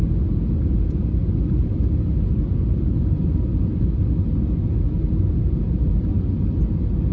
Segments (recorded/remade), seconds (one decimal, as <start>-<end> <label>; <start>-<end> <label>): 0.0-7.1 recorded